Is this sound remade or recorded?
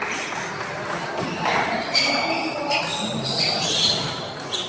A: recorded